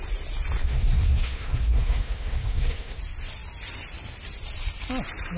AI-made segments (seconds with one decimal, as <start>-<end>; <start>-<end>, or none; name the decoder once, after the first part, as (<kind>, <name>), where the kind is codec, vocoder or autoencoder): 0.6-3.0 (codec, SNAC)